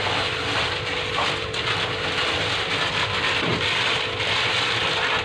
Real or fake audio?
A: real